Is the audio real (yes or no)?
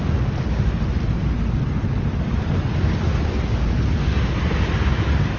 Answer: yes